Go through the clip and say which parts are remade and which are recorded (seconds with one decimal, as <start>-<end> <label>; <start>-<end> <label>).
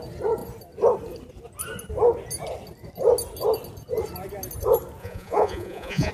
0.0-5.0 recorded; 5.0-6.1 remade